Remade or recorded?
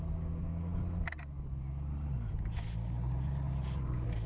recorded